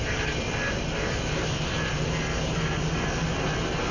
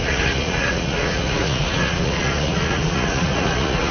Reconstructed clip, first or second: second